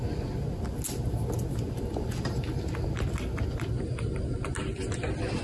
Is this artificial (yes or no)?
no